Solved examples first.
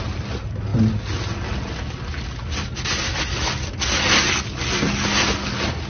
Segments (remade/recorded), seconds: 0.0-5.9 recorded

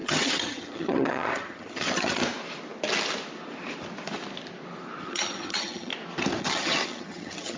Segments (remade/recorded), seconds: 0.0-2.2 remade; 2.2-5.0 recorded; 5.0-5.9 remade; 5.9-6.4 recorded; 6.4-7.6 remade